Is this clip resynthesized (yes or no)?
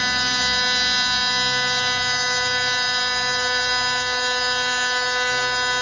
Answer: no